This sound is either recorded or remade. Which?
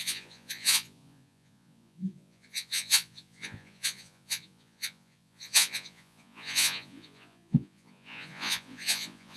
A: remade